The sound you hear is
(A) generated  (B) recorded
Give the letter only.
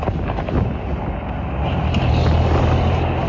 B